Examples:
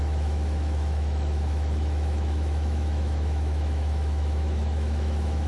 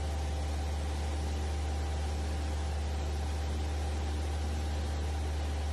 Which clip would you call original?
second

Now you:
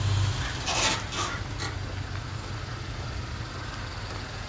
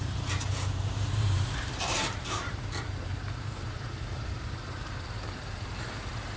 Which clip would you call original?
first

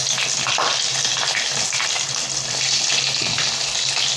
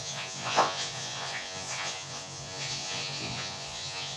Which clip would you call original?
first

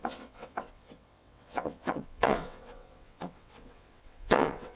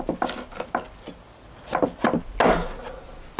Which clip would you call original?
second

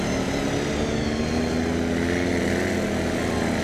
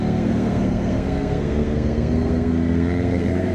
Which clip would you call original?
first